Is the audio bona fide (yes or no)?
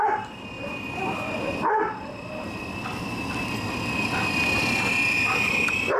no